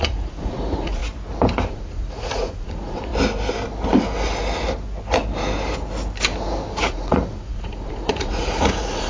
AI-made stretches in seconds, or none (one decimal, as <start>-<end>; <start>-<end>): 0.0-1.0; 1.7-3.1; 6.9-9.1